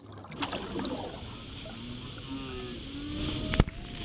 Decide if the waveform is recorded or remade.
recorded